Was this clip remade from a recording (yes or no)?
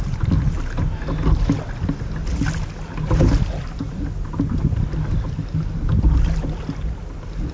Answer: no